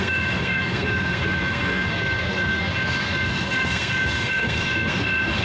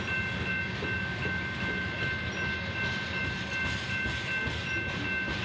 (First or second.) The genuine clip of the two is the second